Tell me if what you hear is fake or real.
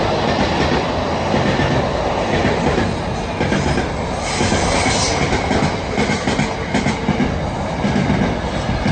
real